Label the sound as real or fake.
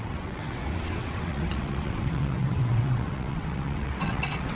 fake